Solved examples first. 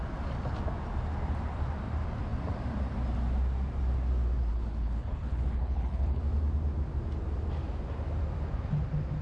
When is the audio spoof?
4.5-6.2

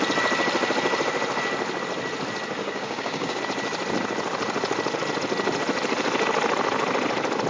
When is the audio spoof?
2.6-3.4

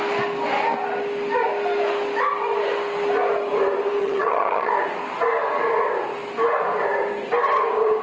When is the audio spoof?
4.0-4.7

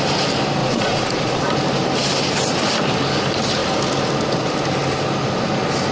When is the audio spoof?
0.6-1.4